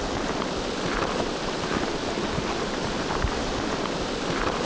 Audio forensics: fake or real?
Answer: fake